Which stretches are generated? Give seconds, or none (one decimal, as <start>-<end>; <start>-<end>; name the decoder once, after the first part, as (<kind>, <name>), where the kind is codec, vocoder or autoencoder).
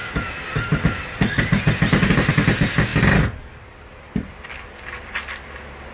none